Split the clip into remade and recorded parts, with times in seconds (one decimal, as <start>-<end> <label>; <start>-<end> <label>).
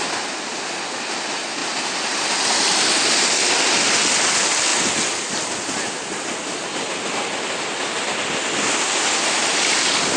0.0-10.2 recorded